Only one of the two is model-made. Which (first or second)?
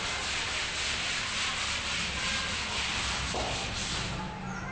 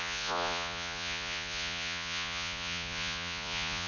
second